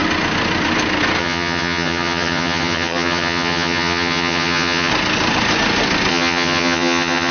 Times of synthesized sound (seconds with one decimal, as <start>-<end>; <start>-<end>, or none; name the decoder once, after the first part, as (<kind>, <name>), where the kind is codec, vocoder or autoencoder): 1.2-4.9 (vocoder, HiFi-GAN); 6.1-7.3